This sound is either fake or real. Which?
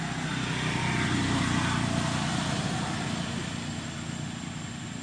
real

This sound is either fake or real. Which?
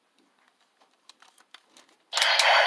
real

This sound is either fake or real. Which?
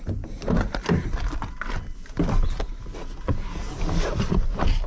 real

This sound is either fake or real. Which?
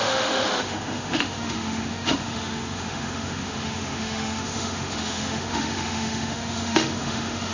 fake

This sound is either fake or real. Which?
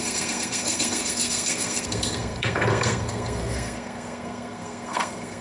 fake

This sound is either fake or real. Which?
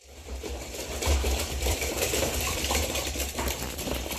fake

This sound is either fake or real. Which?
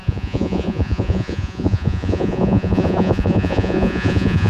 fake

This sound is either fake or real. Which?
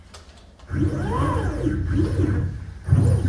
real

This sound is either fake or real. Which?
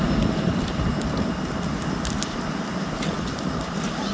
fake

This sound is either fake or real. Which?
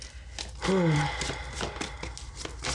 real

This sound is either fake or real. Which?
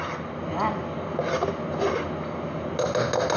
real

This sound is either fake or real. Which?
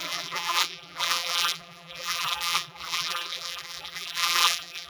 fake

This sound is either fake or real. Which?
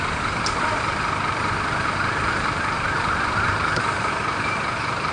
fake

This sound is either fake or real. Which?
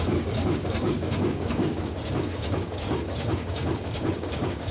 fake